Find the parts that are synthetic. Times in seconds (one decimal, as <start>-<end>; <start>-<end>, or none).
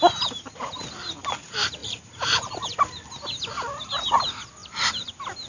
1.8-2.5; 4.6-5.1